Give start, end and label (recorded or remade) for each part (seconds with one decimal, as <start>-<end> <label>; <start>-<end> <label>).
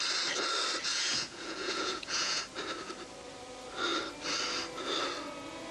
0.0-0.9 recorded; 0.9-2.4 remade; 2.4-5.7 recorded